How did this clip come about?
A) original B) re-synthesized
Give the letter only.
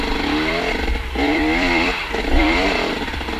B